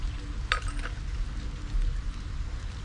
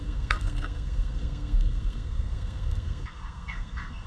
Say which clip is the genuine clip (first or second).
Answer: first